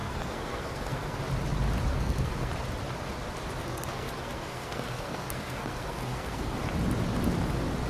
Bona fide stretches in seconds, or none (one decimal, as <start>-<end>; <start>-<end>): 1.2-1.9; 2.5-3.6; 6.6-7.9